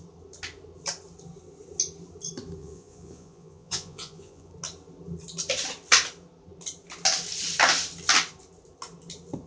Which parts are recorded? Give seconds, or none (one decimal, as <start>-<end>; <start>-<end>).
0.0-2.6; 4.5-9.5